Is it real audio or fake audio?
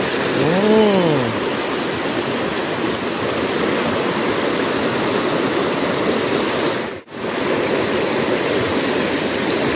real